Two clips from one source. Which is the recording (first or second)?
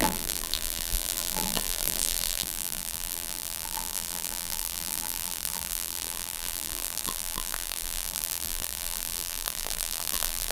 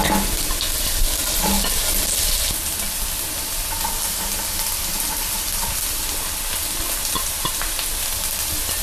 second